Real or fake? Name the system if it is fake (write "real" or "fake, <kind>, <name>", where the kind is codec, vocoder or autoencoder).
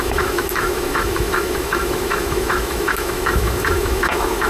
fake, autoencoder, DAC-VAE